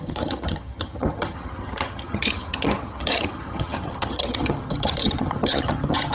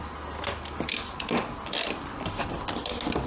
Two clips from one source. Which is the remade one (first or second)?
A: first